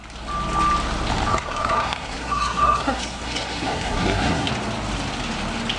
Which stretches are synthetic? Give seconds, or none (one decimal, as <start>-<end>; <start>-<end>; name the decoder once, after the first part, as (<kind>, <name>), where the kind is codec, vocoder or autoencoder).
1.3-4.5 (codec, SNAC)